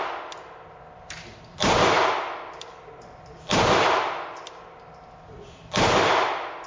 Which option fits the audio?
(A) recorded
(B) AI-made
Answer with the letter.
A